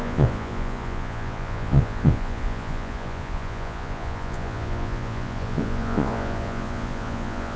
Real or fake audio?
fake